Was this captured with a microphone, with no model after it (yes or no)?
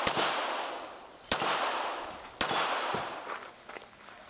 yes